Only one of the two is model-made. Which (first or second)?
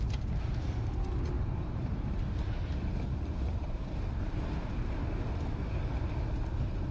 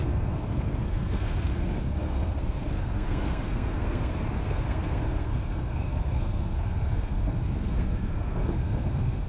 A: second